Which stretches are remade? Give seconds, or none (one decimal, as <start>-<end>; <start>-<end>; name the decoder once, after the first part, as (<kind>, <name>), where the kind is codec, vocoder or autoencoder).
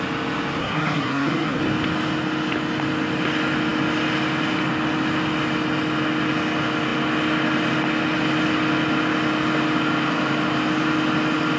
0.6-1.6 (codec, SNAC)